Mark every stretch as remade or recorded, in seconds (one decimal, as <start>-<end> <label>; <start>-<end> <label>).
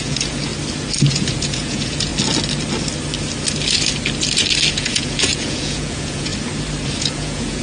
0.0-0.5 remade; 0.5-1.1 recorded; 1.1-2.1 remade; 2.1-4.7 recorded; 4.7-6.3 remade; 6.3-7.0 recorded; 7.0-7.6 remade